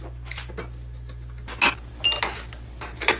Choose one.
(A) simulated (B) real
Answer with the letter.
B